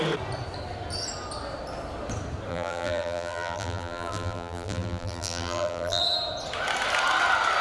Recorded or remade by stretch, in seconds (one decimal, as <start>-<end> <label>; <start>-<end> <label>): 0.0-2.5 recorded; 2.5-6.0 remade; 6.0-7.6 recorded

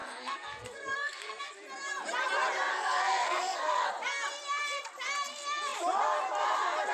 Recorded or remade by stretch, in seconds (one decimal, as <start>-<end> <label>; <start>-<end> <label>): 0.0-1.4 remade; 1.4-2.7 recorded; 2.7-3.9 remade; 3.9-6.9 recorded